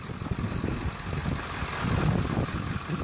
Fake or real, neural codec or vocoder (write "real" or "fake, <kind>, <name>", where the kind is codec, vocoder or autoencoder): real